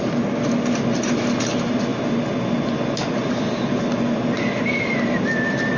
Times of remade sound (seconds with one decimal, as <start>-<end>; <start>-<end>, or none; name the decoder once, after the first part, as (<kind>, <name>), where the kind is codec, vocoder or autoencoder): none